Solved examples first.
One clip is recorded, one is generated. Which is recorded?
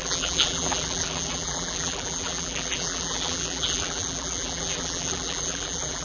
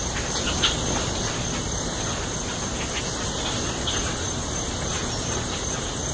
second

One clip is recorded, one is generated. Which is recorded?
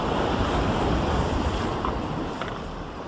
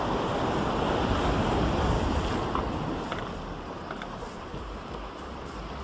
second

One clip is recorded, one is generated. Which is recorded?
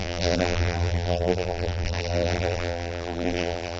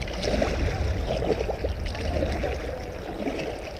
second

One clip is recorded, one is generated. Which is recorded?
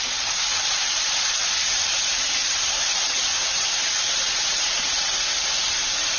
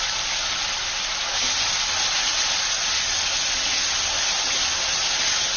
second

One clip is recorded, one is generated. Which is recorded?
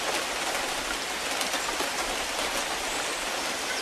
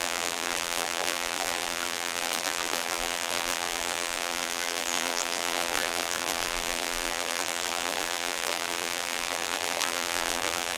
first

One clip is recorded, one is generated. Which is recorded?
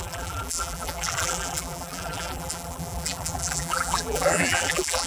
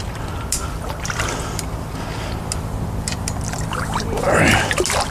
second